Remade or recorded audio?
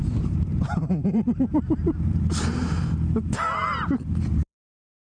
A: remade